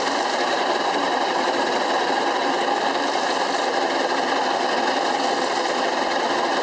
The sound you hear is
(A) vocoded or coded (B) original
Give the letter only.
B